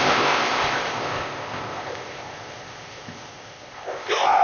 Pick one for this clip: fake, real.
fake